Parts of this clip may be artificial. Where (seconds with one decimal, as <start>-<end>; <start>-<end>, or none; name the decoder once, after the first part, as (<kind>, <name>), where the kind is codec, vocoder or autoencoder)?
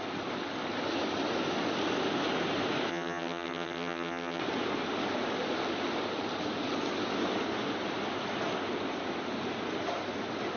2.9-4.4 (vocoder, HiFi-GAN)